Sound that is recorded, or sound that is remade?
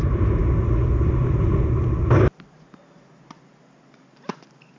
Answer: recorded